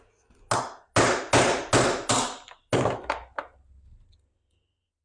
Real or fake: real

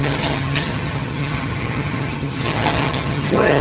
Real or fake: fake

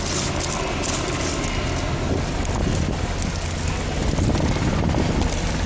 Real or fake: real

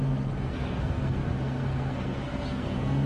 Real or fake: fake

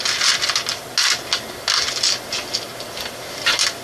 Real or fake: real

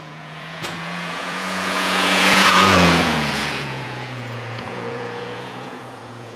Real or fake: fake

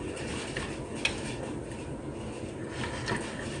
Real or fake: real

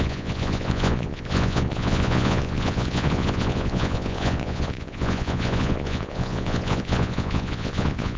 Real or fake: fake